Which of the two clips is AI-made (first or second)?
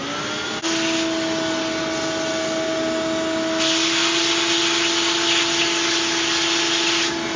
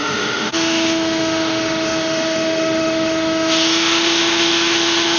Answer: second